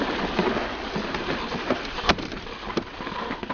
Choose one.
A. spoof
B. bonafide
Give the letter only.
B